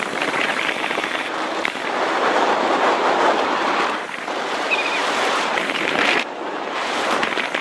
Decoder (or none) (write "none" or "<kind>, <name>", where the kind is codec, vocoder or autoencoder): vocoder, BigVGAN v2